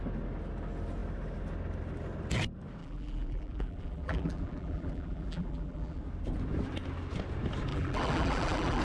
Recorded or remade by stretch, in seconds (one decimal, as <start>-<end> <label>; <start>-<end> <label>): 0.0-2.8 recorded; 2.8-6.0 remade; 6.0-7.7 recorded; 7.7-8.8 remade